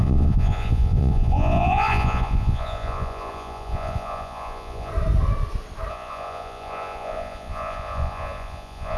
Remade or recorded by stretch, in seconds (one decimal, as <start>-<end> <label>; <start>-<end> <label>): 0.0-4.9 remade; 4.9-5.9 recorded; 5.9-9.0 remade